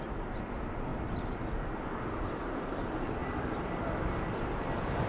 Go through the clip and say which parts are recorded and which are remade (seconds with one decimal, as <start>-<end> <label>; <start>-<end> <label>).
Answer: 0.0-0.9 recorded; 0.9-1.8 remade; 1.8-3.2 recorded; 3.2-4.0 remade; 4.0-5.1 recorded